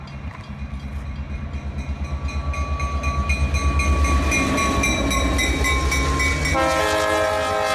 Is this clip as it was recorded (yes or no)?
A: yes